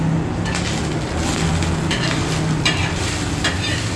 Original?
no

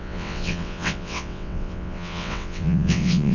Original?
no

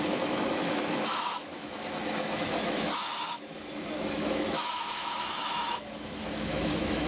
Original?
no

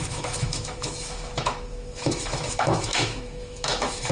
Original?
no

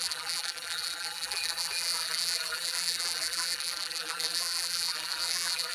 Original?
no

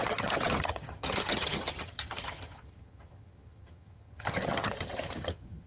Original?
no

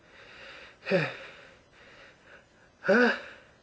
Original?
yes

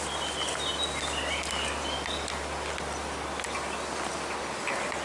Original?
yes